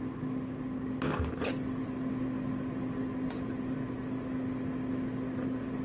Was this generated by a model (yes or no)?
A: no